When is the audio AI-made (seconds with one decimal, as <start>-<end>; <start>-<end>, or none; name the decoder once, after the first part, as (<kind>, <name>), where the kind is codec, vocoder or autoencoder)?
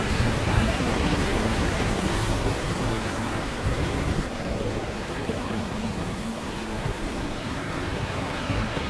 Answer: 0.0-8.9 (codec, SNAC)